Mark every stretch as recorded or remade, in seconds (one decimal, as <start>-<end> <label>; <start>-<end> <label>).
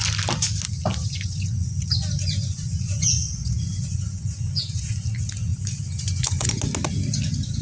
0.0-0.9 recorded; 0.9-4.9 remade; 4.9-5.5 recorded; 5.5-6.5 remade; 6.5-7.6 recorded